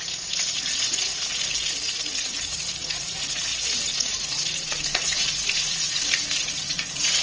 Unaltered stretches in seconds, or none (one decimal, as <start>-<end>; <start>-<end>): none